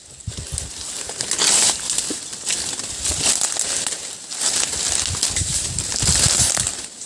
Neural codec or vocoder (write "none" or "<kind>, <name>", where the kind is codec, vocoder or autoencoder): none